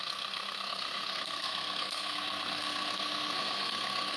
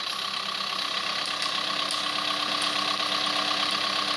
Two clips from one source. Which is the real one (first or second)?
second